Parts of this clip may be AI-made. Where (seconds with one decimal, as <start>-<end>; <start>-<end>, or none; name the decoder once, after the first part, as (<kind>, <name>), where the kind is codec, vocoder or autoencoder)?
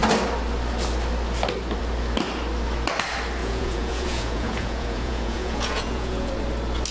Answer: 3.4-6.3 (vocoder, Vocos)